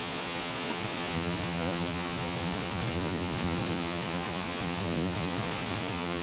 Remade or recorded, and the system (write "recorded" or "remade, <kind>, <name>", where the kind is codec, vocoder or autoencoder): remade, vocoder, Vocos